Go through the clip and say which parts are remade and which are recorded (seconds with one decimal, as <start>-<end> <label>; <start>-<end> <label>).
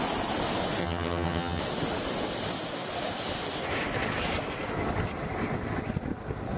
0.0-0.8 recorded; 0.8-1.6 remade; 1.6-6.6 recorded